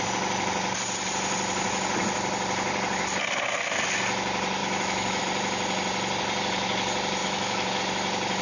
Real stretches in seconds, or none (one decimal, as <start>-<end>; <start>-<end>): 0.0-4.6; 5.2-7.2; 7.8-8.4